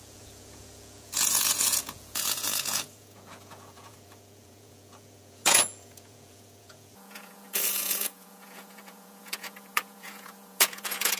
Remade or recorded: remade